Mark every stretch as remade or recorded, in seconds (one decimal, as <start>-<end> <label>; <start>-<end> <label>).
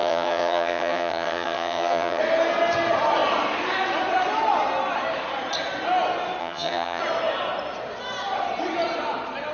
0.0-2.2 remade; 2.2-6.4 recorded; 6.4-7.0 remade; 7.0-9.5 recorded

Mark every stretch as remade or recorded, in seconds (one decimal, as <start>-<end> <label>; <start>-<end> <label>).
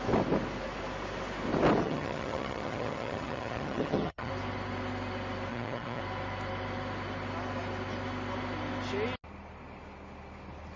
0.0-1.8 recorded; 1.8-4.3 remade; 4.3-5.5 recorded; 5.5-6.0 remade; 6.0-10.8 recorded